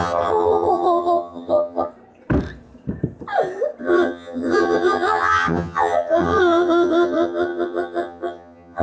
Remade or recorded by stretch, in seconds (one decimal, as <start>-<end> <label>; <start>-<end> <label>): 0.0-1.9 remade; 1.9-3.8 recorded; 3.8-8.8 remade